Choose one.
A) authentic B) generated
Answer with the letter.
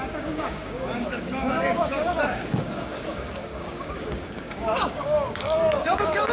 B